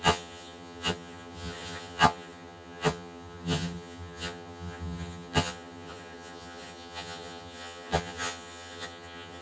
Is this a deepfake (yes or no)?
yes